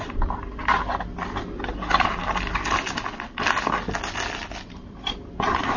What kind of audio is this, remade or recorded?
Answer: recorded